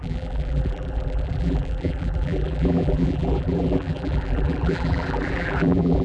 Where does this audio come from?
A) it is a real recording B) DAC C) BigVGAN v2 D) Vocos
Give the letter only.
C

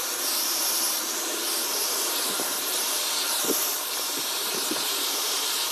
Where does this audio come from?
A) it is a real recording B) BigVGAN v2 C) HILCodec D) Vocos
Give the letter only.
B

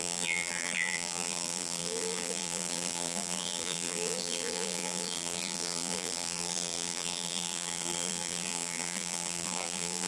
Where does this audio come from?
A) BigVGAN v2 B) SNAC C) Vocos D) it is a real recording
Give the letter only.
A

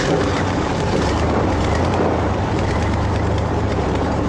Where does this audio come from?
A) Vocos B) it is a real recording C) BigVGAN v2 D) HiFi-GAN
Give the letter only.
C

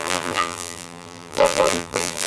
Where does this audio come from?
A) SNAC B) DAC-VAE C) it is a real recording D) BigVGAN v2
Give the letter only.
D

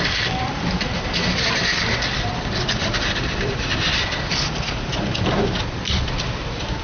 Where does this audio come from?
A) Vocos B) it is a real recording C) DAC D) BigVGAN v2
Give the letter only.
D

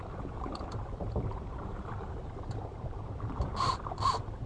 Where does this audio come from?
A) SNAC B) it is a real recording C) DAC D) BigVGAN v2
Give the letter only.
D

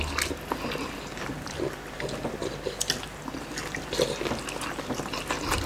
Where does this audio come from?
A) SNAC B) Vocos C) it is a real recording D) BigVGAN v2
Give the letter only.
C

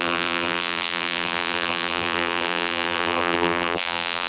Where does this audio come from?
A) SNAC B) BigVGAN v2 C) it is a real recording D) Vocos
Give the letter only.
B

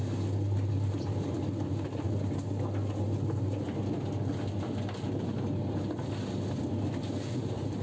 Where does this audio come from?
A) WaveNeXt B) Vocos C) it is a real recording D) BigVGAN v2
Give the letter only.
C